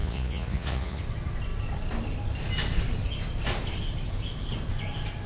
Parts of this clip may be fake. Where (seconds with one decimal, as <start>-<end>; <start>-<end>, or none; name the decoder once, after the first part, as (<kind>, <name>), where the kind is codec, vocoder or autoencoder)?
0.0-1.0 (vocoder, Vocos)